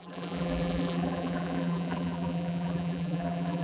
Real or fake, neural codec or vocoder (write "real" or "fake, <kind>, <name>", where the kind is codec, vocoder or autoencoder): fake, vocoder, BigVGAN v2